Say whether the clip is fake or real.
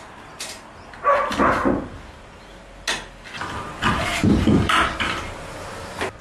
real